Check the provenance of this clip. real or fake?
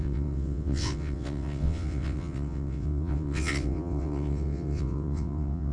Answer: fake